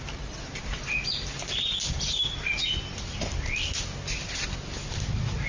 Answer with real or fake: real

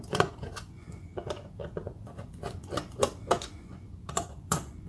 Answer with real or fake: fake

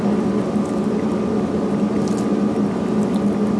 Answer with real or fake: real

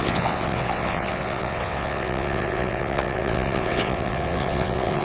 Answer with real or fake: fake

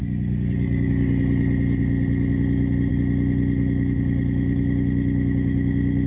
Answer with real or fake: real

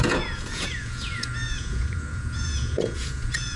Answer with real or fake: fake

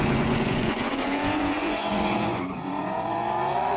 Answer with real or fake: fake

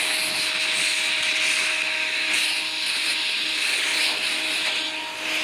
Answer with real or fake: real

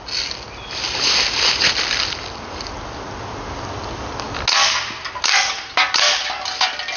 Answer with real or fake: real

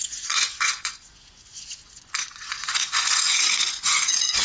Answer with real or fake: fake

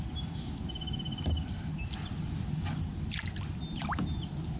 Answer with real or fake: real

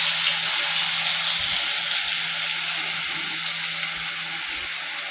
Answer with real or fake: real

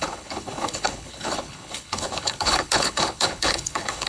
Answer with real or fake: fake